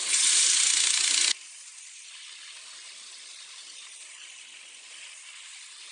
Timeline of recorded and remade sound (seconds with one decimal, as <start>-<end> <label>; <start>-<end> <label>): 0.0-5.9 recorded